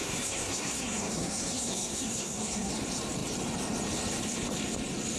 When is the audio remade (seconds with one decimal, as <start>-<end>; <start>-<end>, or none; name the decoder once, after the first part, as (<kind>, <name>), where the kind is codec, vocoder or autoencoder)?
0.0-2.7 (codec, SNAC)